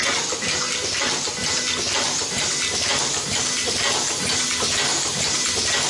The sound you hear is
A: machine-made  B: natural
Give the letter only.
B